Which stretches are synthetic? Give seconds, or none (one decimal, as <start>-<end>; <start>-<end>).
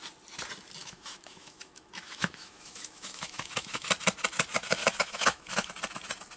0.8-3.9; 4.8-5.7